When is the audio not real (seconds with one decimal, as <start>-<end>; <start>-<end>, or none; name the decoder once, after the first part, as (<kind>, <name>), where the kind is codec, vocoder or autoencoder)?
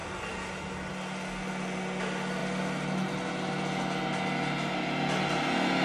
none